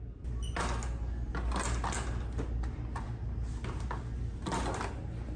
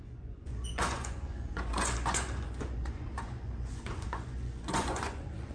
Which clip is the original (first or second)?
first